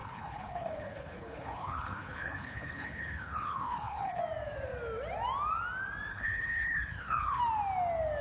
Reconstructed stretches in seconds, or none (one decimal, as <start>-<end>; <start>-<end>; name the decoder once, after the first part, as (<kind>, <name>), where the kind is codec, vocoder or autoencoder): 0.0-4.2 (codec, HILCodec); 6.1-7.4

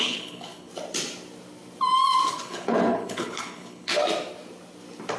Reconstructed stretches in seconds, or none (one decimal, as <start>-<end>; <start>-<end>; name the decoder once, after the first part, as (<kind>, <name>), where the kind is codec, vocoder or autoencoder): 0.0-0.7 (codec, HILCodec); 2.3-4.0